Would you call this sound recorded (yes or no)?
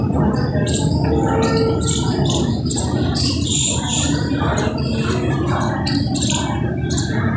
yes